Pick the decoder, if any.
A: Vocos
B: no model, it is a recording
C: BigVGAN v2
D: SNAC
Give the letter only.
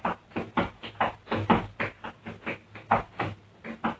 B